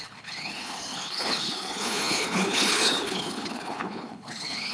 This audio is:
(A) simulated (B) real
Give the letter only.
A